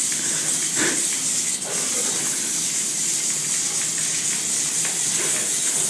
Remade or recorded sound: recorded